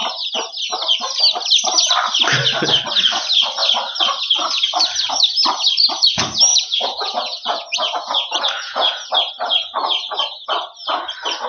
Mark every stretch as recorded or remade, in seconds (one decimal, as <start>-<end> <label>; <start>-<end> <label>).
0.0-6.5 recorded; 6.5-9.3 remade; 9.3-11.5 recorded